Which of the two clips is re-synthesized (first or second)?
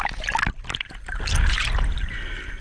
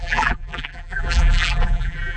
second